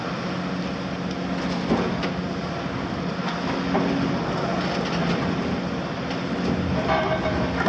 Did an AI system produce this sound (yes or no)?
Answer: no